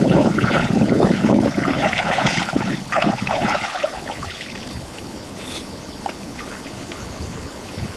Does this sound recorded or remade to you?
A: remade